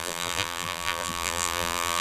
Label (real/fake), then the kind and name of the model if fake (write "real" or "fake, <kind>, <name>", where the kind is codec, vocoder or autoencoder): fake, vocoder, BigVGAN v2